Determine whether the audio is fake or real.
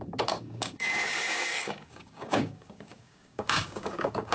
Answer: fake